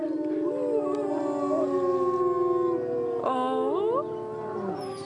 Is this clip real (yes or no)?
yes